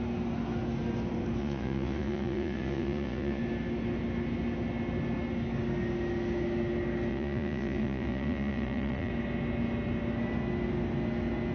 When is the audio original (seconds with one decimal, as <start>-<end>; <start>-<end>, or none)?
0.0-1.4; 3.4-7.1; 9.1-11.5